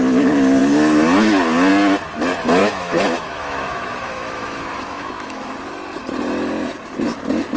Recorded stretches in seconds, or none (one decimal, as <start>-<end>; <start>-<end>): 0.0-2.6; 5.5-7.6